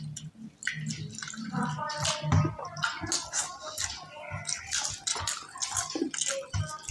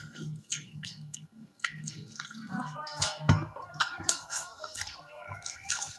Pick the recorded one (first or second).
first